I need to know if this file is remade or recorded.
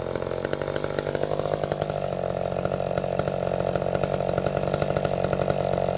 recorded